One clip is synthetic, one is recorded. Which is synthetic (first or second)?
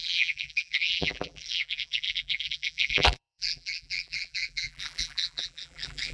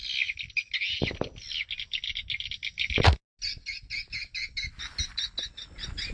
first